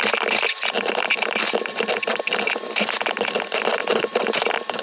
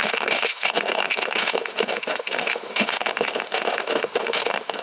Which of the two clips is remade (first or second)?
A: second